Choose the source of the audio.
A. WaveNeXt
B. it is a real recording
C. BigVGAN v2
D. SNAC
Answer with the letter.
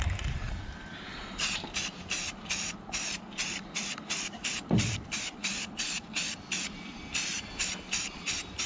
C